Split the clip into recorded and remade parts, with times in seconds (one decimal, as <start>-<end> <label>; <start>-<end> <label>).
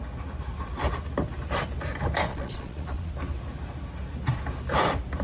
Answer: 0.0-2.3 recorded; 2.3-3.1 remade; 3.1-5.2 recorded